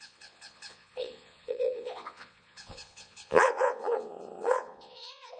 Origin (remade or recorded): remade